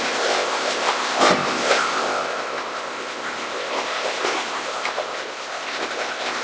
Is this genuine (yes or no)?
no